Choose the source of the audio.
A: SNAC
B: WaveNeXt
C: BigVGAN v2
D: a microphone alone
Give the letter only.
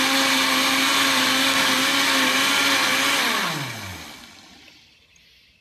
D